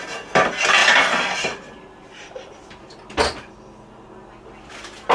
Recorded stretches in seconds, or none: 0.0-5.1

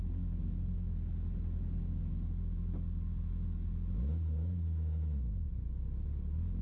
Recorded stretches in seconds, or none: 0.0-6.6

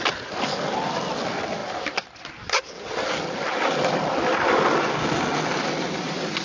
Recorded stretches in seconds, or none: 0.0-6.4

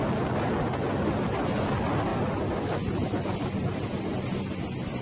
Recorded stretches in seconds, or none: 0.0-5.0

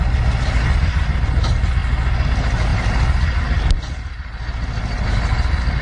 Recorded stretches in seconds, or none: 0.0-5.8

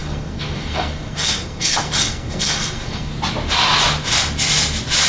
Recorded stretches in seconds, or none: 3.1-5.1

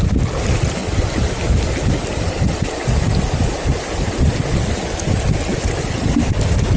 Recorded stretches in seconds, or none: 0.0-6.8